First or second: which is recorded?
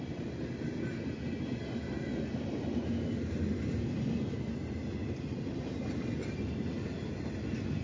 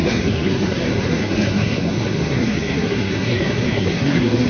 first